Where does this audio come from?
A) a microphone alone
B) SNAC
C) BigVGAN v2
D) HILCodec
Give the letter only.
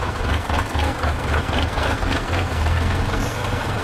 B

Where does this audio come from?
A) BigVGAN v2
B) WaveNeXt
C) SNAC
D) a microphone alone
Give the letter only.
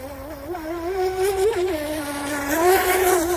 D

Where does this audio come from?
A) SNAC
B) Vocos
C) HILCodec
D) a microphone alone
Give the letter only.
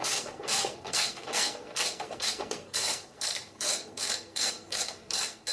A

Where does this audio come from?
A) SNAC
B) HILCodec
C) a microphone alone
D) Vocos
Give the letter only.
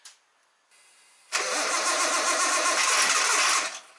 C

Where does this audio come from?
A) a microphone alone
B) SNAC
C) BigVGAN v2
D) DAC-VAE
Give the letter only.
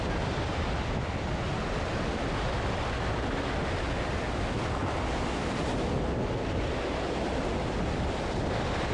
A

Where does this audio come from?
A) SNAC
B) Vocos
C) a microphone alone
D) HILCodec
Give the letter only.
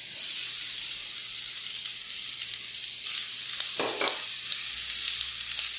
C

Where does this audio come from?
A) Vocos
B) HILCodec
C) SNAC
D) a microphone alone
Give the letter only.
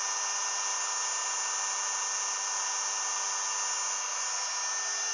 D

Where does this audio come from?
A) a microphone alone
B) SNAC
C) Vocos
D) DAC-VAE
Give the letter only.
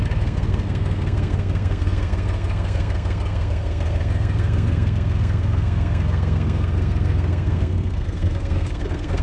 B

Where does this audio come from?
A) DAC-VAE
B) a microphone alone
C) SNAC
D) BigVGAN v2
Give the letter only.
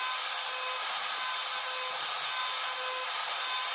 B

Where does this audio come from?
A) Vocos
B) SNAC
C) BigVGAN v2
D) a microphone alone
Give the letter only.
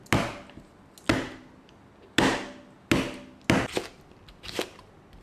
D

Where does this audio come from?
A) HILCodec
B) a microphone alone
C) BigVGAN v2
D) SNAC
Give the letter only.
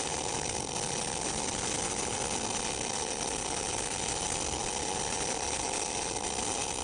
B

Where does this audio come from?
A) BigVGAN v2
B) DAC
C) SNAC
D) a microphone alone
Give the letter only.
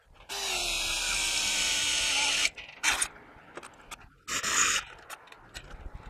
D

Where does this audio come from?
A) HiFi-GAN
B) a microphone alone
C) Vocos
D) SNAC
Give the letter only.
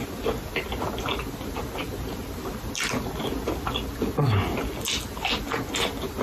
B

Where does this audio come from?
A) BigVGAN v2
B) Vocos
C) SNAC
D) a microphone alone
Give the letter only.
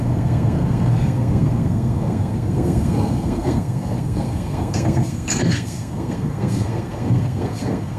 C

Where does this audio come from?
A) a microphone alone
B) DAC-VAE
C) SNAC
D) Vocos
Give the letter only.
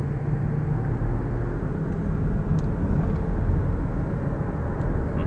A